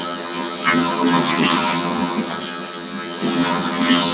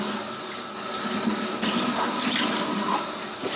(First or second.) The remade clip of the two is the first